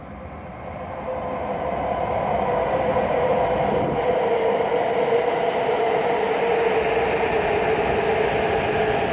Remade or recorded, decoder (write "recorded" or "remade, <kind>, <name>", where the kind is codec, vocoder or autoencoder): recorded